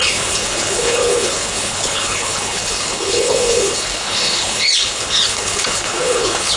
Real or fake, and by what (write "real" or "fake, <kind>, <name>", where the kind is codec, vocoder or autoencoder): fake, codec, HILCodec